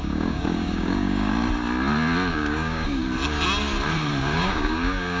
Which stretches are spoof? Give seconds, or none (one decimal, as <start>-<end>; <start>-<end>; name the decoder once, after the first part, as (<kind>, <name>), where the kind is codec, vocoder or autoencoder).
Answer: 0.0-1.3 (codec, DAC); 2.3-3.0; 4.2-5.2